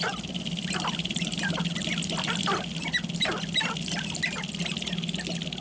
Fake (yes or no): no